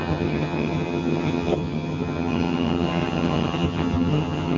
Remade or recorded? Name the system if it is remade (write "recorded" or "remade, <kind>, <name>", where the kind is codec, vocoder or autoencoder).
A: remade, vocoder, HiFi-GAN